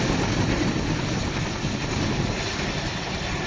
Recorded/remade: recorded